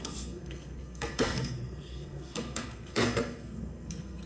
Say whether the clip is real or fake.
fake